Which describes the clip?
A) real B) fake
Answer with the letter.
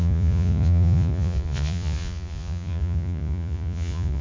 B